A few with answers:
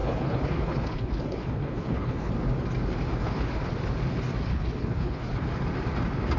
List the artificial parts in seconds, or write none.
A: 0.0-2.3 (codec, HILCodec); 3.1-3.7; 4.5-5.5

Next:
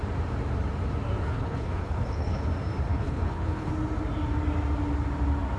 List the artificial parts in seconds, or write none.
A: 1.2-2.5 (codec, HILCodec); 2.9-3.7

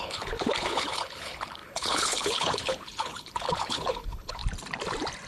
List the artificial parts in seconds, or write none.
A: 0.0-4.4 (codec, HILCodec)

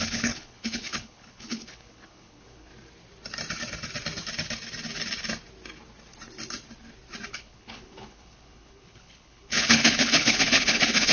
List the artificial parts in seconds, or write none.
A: 0.0-2.7 (codec, HILCodec); 7.3-11.1